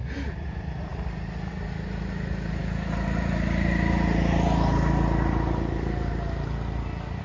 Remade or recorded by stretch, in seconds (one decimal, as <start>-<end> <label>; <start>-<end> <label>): 0.0-7.2 recorded